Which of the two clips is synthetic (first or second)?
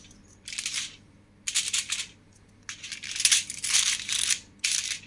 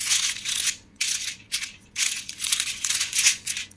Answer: second